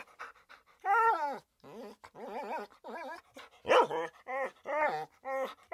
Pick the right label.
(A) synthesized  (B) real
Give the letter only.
B